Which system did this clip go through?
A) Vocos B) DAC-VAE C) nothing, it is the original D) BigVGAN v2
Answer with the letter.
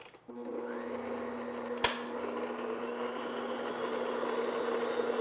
C